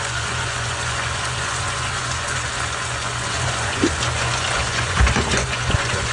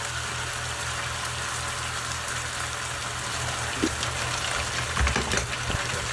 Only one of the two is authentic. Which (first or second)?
second